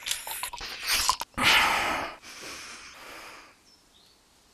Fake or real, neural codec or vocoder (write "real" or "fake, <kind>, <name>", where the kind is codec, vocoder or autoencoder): real